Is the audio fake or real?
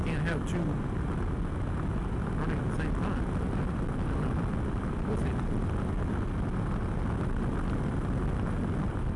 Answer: real